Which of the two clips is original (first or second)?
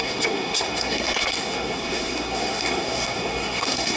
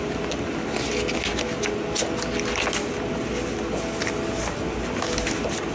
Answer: second